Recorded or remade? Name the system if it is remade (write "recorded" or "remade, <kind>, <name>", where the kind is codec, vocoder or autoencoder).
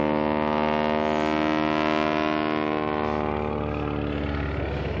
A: recorded